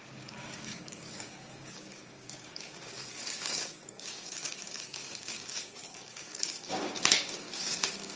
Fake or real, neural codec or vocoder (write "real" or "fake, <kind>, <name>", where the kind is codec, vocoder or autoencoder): fake, codec, DAC